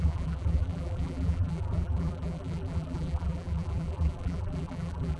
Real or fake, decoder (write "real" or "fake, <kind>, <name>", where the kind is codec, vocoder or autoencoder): fake, vocoder, BigVGAN v2